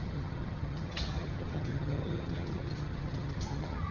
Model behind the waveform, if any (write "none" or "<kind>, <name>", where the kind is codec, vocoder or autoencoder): vocoder, HiFi-GAN